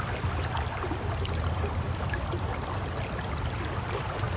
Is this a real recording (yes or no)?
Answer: yes